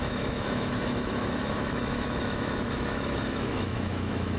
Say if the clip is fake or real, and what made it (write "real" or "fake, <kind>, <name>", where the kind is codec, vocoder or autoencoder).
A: fake, autoencoder, DAC-VAE